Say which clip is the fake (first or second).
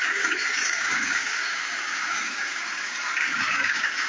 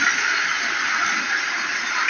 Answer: first